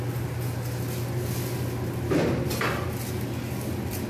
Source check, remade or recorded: recorded